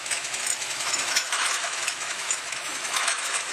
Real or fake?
fake